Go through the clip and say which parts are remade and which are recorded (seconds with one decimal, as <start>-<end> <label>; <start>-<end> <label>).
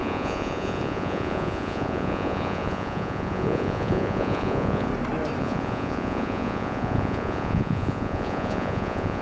0.0-4.9 remade; 4.9-5.4 recorded; 5.4-9.2 remade